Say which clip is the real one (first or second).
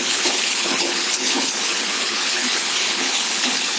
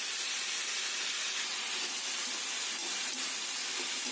second